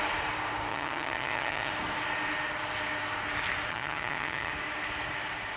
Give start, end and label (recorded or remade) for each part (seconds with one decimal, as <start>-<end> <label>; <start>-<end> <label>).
0.0-0.7 recorded; 0.7-1.7 remade; 1.7-3.7 recorded; 3.7-4.5 remade; 4.5-5.6 recorded